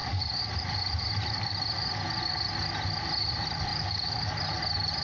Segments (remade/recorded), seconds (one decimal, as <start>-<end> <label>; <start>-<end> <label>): 0.0-1.6 remade; 1.6-3.7 recorded; 3.7-4.4 remade; 4.4-5.0 recorded